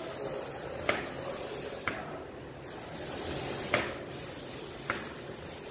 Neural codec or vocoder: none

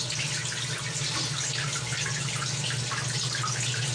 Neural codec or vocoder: none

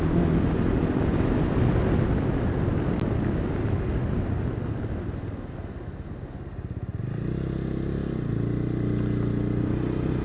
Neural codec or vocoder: none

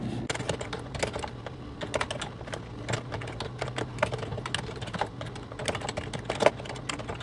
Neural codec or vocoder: none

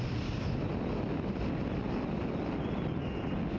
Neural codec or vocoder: none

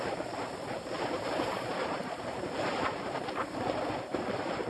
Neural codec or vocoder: vocoder, BigVGAN v2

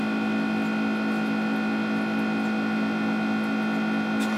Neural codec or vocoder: none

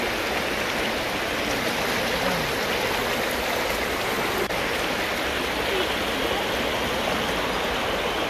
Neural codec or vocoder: none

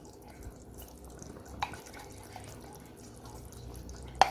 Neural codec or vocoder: none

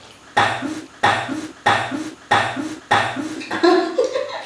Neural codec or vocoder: none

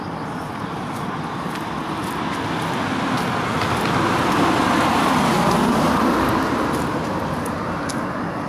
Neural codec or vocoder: none